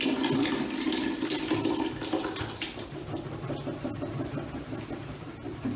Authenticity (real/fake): real